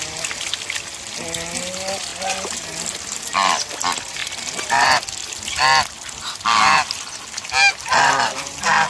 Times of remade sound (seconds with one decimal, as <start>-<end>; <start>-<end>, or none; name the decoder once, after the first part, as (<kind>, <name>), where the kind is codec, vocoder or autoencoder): none